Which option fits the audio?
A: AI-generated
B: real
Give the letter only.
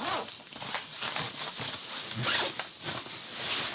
B